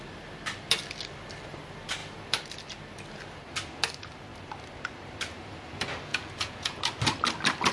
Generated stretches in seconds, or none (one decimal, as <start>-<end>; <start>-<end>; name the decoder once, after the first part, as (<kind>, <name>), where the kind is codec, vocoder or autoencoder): 6.1-6.8 (vocoder, Vocos)